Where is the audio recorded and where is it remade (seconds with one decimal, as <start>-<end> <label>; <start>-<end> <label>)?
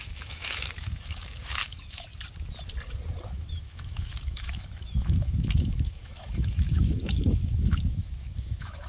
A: 0.0-2.1 remade; 2.1-3.5 recorded; 3.5-8.9 remade